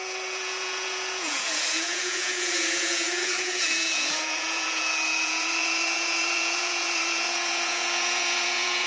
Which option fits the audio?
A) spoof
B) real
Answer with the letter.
A